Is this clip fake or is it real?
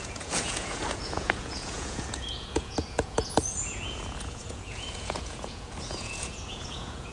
fake